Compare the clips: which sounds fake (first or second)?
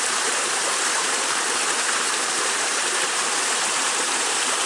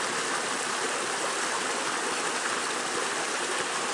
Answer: first